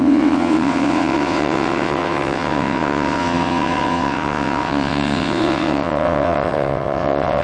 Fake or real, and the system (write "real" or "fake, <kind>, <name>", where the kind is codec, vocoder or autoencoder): fake, vocoder, WaveNeXt